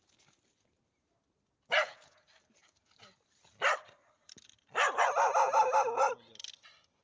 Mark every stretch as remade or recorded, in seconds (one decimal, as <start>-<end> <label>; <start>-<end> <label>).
0.0-1.8 recorded; 1.8-2.3 remade; 2.3-7.0 recorded